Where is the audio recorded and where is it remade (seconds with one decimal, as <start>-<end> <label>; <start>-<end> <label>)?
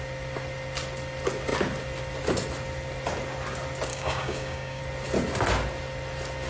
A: 0.0-3.9 recorded; 3.9-4.8 remade; 4.8-6.5 recorded